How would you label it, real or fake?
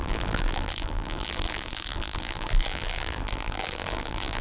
fake